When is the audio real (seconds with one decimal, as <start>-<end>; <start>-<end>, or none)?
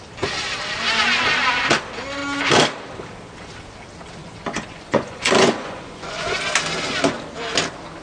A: 0.0-4.2; 6.4-8.0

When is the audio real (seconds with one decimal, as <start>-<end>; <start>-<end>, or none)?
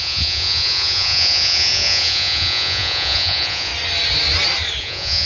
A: 3.7-4.8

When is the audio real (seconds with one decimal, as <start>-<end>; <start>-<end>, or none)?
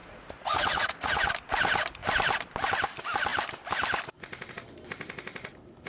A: 1.3-5.9